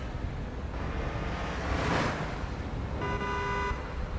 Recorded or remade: recorded